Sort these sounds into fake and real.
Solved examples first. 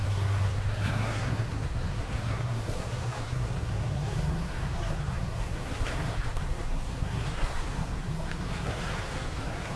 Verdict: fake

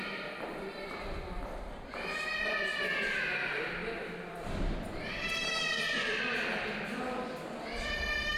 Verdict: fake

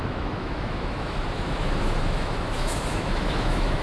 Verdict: fake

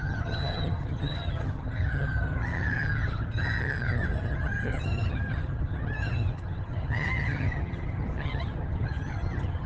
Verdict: fake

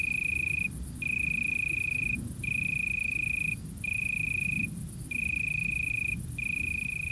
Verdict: fake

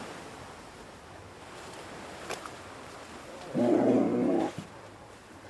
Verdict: fake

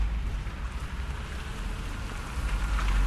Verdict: real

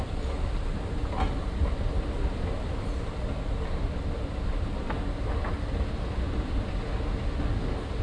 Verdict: real